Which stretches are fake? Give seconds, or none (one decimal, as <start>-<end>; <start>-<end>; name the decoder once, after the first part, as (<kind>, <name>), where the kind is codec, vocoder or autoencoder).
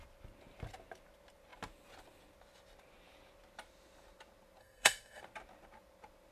4.6-5.2 (codec, SNAC)